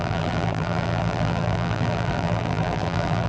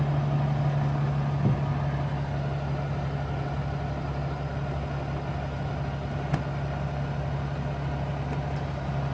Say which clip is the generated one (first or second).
first